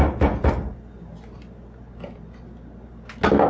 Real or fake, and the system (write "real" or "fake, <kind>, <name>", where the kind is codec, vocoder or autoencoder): real